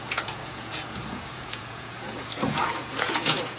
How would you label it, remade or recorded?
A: remade